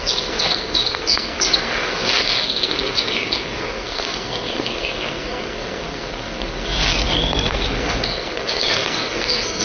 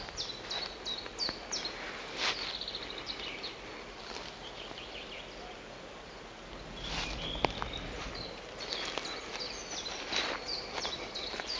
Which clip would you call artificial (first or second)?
first